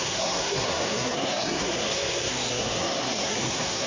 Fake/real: fake